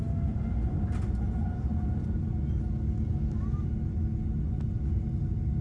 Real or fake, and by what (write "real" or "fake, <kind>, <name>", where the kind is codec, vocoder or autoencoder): real